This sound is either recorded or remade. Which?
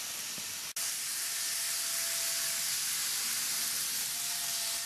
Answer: recorded